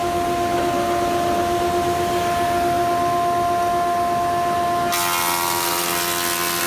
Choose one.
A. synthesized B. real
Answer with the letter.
B